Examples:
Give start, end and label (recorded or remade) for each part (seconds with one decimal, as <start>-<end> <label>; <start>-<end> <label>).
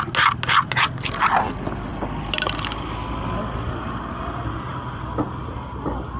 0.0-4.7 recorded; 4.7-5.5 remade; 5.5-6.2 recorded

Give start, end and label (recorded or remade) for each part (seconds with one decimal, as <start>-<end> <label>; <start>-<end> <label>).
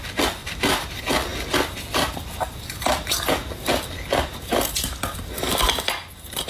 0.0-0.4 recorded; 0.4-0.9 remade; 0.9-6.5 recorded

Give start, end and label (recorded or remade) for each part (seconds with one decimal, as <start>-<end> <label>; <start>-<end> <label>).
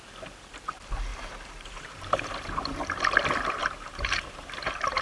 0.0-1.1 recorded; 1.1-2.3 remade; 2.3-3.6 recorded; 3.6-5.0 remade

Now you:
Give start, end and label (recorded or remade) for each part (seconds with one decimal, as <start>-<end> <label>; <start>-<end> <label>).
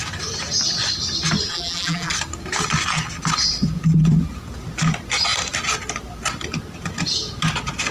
0.0-1.5 recorded; 1.5-2.1 remade; 2.1-7.9 recorded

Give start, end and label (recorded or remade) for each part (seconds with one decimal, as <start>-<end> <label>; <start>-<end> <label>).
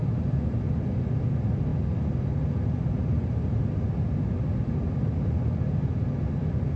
0.0-6.8 recorded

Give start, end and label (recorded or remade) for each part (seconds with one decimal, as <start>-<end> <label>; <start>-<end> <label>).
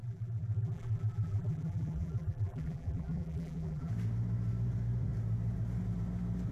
0.0-3.9 remade; 3.9-6.5 recorded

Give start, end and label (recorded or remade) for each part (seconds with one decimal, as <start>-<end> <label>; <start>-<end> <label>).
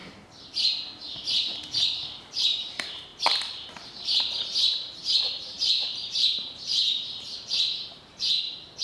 0.0-2.2 recorded; 2.2-3.1 remade; 3.1-3.7 recorded; 3.7-8.8 remade